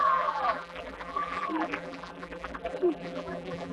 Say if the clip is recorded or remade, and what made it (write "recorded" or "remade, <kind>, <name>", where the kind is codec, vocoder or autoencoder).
remade, vocoder, BigVGAN v2